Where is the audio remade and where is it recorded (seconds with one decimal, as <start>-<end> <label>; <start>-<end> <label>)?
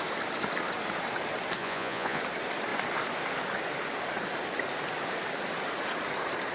0.0-1.6 recorded; 1.6-2.2 remade; 2.2-6.5 recorded